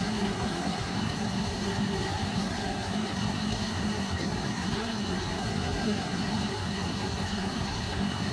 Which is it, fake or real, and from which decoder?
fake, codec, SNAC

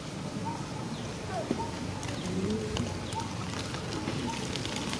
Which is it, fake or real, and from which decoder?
real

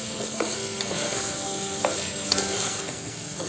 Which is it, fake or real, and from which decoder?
fake, codec, SNAC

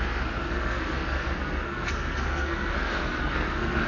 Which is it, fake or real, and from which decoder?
fake, codec, SNAC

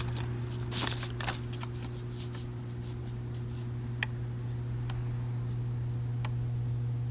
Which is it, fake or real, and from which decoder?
real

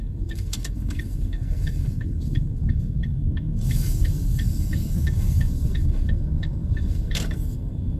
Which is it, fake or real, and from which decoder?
fake, codec, SNAC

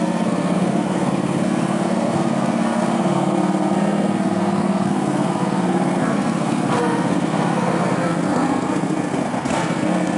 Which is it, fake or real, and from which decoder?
fake, codec, SNAC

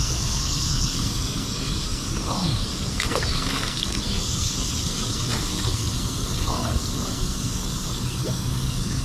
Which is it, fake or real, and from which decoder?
fake, codec, SNAC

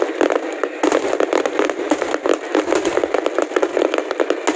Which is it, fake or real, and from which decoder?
real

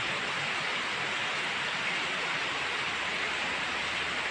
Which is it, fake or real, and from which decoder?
real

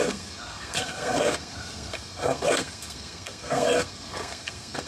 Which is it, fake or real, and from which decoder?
fake, codec, SNAC